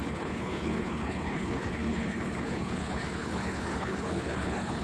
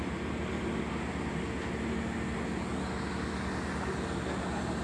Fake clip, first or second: first